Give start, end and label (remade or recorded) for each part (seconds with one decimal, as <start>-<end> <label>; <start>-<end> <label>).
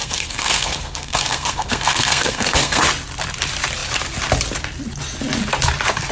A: 0.0-2.8 remade; 2.8-6.1 recorded